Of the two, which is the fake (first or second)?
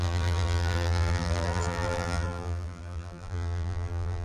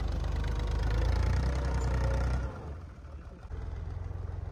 first